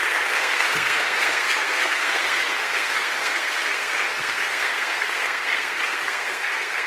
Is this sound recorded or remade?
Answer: remade